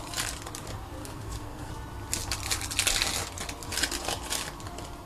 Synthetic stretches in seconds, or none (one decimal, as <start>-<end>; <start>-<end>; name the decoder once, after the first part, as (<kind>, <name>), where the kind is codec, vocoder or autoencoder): 1.0-1.7 (codec, SNAC)